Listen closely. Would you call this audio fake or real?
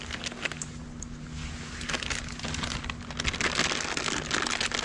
real